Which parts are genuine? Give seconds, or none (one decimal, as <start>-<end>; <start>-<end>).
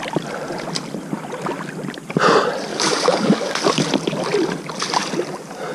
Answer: 0.0-2.7; 3.6-5.7